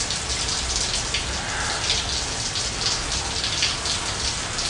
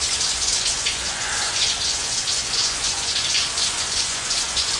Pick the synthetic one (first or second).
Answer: second